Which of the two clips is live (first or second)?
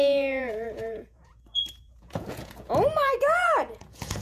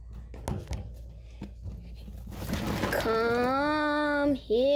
second